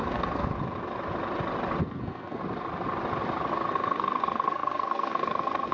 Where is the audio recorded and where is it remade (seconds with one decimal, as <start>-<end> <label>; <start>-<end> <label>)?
0.0-0.5 remade; 0.5-1.8 recorded; 1.8-2.4 remade; 2.4-3.7 recorded; 3.7-5.7 remade